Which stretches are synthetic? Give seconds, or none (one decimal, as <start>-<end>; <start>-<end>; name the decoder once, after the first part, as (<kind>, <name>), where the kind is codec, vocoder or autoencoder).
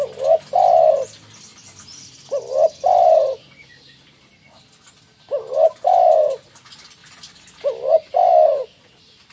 1.5-4.7 (vocoder, BigVGAN v2)